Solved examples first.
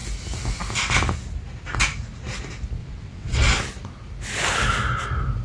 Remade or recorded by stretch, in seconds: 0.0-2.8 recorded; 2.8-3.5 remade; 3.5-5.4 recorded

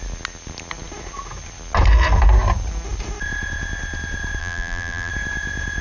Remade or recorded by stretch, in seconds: 0.0-4.4 recorded; 4.4-5.1 remade; 5.1-5.8 recorded

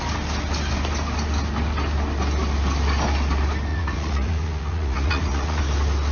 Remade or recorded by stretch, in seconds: 0.0-3.7 recorded; 3.7-5.6 remade; 5.6-6.1 recorded

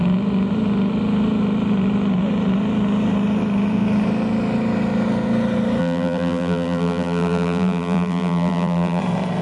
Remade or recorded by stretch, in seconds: 0.0-5.8 recorded; 5.8-9.0 remade; 9.0-9.4 recorded